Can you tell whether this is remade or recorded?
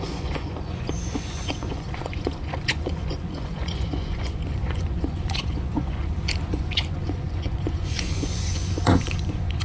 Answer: remade